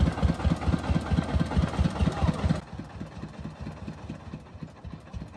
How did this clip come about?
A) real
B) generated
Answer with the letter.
A